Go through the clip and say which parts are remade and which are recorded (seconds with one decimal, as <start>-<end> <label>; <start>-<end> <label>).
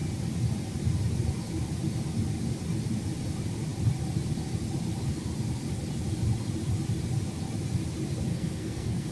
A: 0.0-8.3 recorded; 8.3-9.1 remade